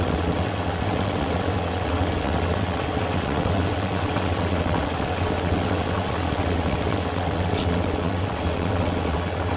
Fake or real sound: fake